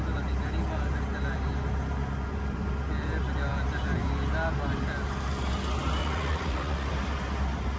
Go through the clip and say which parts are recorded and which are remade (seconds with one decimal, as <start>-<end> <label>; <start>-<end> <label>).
0.0-6.0 recorded; 6.0-6.9 remade; 6.9-7.8 recorded